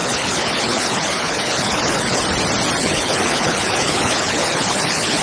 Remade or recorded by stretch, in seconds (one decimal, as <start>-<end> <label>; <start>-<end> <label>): 0.0-2.2 remade; 2.2-2.8 recorded; 2.8-5.2 remade

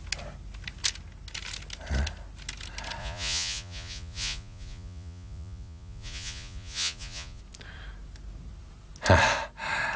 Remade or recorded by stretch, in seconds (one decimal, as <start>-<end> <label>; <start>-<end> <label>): 0.0-3.0 recorded; 3.0-7.4 remade; 7.4-10.0 recorded

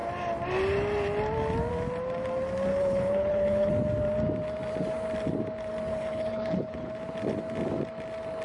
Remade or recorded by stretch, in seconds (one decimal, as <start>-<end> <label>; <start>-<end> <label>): 0.0-2.7 recorded; 2.7-3.7 remade; 3.7-5.9 recorded; 5.9-6.9 remade; 6.9-8.4 recorded